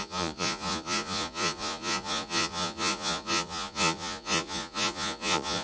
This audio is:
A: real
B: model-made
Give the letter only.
B